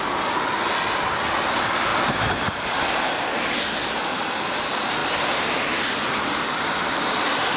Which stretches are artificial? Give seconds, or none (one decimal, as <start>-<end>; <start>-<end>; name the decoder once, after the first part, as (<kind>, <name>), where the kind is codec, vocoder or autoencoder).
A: 1.9-3.1 (vocoder, BigVGAN v2); 4.1-4.6; 5.0-5.9